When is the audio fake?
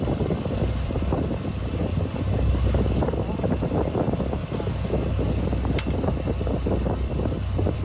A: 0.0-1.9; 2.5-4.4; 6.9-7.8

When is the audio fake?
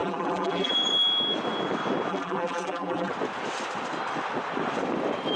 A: 0.0-0.7; 2.1-3.1